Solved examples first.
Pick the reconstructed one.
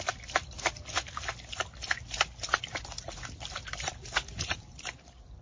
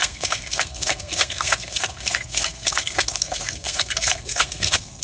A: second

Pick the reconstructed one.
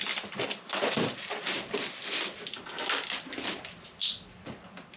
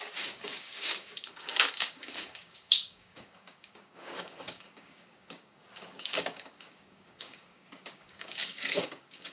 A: second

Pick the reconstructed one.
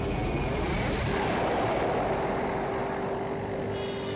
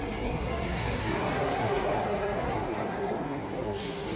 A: second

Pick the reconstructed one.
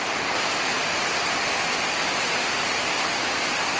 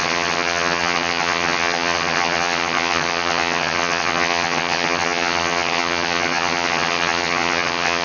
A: second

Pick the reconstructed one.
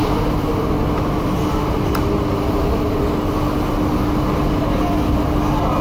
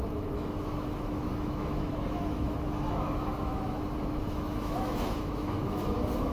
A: second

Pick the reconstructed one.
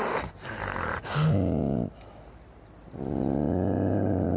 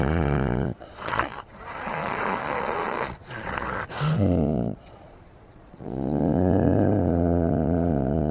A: second